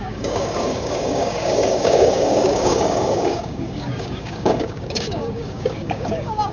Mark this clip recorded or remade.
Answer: remade